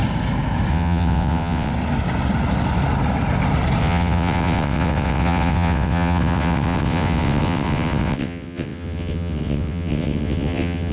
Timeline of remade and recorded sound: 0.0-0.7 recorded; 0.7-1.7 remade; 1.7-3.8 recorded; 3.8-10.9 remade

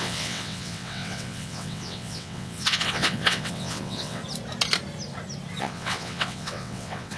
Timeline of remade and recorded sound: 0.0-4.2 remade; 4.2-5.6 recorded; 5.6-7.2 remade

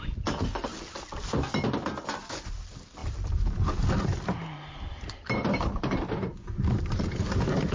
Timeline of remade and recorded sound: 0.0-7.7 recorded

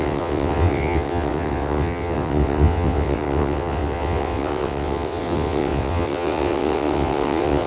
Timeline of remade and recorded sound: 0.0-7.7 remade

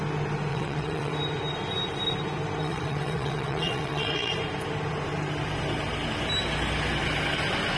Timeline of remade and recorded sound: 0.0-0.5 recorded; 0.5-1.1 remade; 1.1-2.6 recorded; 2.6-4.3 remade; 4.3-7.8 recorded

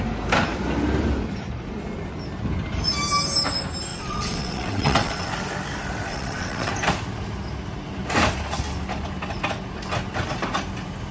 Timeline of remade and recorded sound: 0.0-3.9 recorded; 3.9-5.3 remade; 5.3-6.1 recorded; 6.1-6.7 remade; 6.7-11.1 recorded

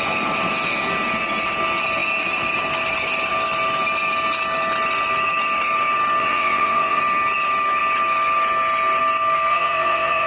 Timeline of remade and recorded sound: 0.0-6.2 recorded; 6.2-7.0 remade; 7.0-9.5 recorded; 9.5-10.3 remade

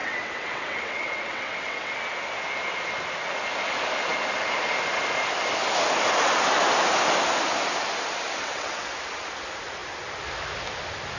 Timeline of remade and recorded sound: 0.0-2.0 remade; 2.0-8.4 recorded; 8.4-8.9 remade; 8.9-11.2 recorded